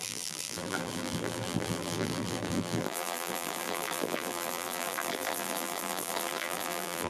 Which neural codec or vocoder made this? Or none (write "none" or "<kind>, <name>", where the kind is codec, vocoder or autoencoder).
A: vocoder, BigVGAN v2